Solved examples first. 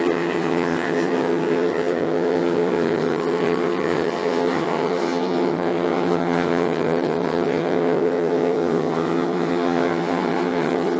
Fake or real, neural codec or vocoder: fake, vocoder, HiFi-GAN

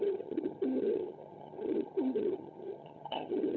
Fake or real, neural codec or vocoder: fake, vocoder, HiFi-GAN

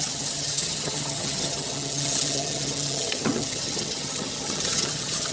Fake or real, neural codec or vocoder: fake, vocoder, HiFi-GAN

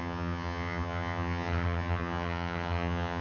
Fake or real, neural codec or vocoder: fake, vocoder, HiFi-GAN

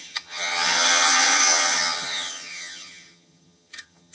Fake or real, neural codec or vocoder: fake, vocoder, HiFi-GAN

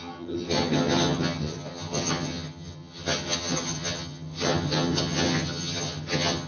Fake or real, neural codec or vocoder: fake, vocoder, HiFi-GAN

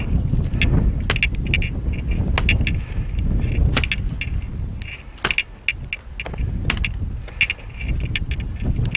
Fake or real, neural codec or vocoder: real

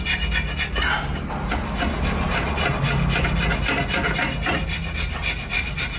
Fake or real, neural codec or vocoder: real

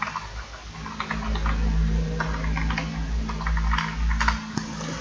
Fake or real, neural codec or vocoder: real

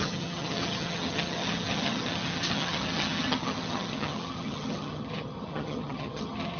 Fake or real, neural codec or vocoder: fake, vocoder, HiFi-GAN